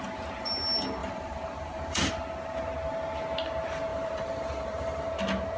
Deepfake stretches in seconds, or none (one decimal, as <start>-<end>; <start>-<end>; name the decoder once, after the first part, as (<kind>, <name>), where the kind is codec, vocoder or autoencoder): 1.0-2.1 (vocoder, BigVGAN v2); 3.9-5.1